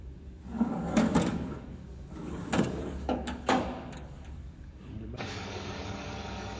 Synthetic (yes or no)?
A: yes